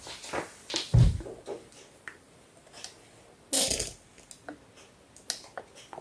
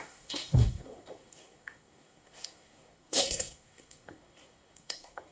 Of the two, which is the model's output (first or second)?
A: second